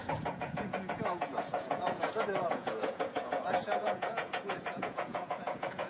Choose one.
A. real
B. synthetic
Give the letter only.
B